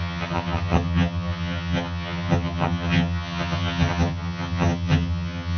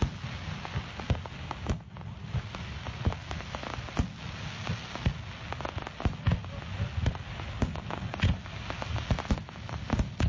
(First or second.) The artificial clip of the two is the first